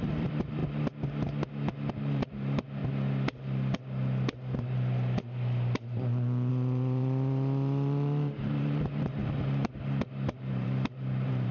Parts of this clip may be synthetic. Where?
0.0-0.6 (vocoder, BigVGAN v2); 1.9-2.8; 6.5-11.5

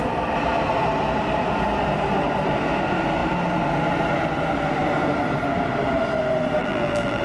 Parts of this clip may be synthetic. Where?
6.6-7.2 (vocoder, BigVGAN v2)

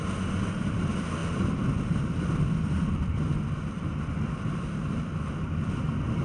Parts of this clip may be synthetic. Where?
none